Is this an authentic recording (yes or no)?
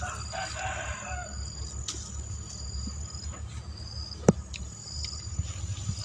yes